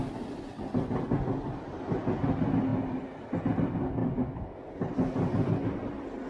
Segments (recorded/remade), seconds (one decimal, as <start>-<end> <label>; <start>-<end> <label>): 0.0-6.3 recorded